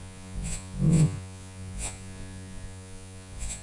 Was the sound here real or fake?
fake